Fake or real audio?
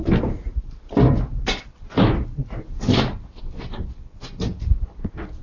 real